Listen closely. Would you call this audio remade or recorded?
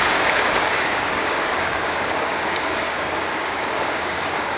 remade